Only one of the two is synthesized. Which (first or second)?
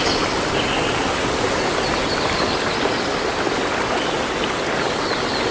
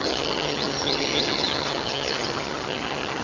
second